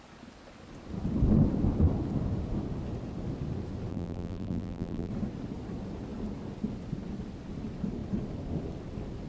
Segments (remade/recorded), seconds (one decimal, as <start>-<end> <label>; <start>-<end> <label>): 0.0-3.9 recorded; 3.9-5.1 remade; 5.1-9.3 recorded